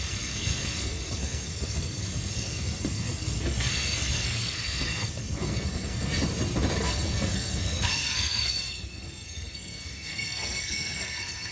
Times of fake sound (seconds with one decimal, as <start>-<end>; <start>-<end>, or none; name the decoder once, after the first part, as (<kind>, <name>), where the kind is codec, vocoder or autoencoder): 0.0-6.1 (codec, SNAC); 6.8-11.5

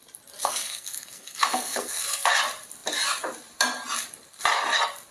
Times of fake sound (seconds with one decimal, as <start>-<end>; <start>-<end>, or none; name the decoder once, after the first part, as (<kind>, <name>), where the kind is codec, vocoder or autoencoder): 0.4-2.3 (codec, SNAC)

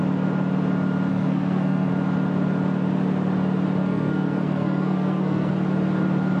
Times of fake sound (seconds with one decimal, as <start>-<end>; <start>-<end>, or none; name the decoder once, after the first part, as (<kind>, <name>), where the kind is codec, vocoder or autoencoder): 1.1-1.9 (codec, SNAC); 3.8-5.5

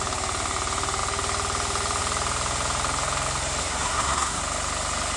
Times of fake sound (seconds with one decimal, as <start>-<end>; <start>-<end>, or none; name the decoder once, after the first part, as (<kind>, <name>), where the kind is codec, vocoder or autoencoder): 3.6-4.4 (codec, SNAC)

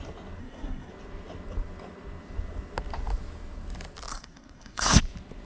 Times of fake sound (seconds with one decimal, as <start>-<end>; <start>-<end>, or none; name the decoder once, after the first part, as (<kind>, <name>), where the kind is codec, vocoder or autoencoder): 0.4-0.9 (codec, SNAC); 4.1-5.0